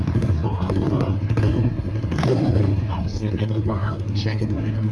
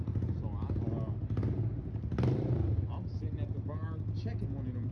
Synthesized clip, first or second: first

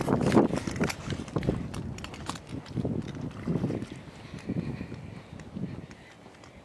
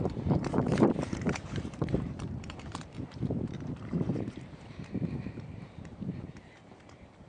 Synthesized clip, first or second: second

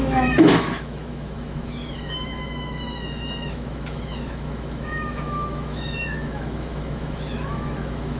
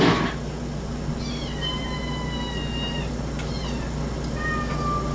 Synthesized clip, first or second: first